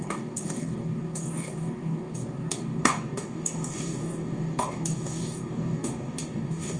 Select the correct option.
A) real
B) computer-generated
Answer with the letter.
B